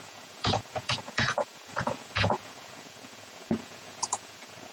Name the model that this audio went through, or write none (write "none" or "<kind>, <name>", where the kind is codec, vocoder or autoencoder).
vocoder, Vocos